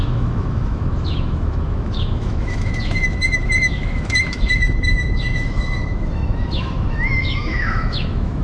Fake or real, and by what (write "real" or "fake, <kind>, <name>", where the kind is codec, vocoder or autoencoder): fake, autoencoder, DAC-VAE